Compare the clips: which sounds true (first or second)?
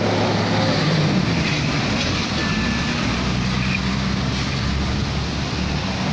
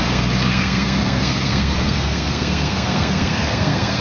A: first